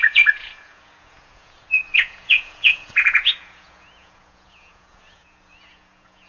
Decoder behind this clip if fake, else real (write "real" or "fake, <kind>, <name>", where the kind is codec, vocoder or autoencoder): fake, vocoder, Vocos